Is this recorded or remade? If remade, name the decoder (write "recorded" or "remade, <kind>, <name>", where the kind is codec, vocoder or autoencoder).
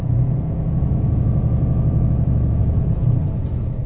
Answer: remade, vocoder, Vocos